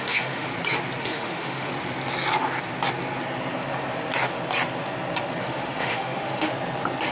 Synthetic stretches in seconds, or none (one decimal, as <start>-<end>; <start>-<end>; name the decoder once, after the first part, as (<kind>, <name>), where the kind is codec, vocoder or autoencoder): 0.0-0.5 (autoencoder, DAC-VAE); 1.0-1.7; 5.4-6.5